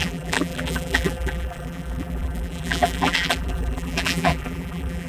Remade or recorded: remade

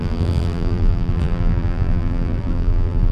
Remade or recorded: remade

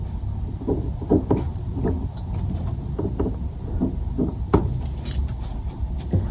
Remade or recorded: recorded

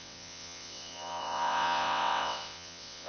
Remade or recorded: remade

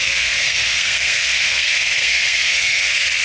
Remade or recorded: remade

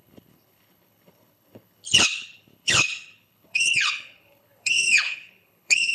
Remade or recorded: remade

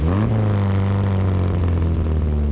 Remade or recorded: recorded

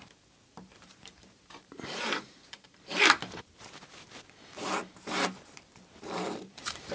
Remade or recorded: remade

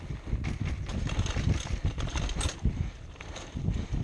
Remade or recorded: recorded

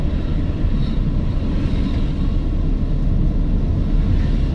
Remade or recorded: recorded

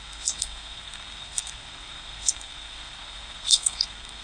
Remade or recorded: remade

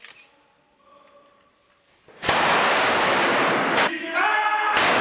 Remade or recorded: recorded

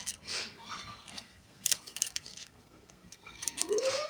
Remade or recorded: remade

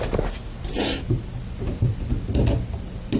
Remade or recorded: recorded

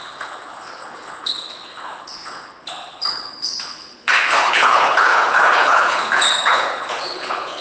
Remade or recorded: remade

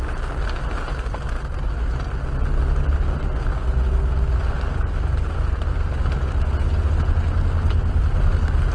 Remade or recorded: recorded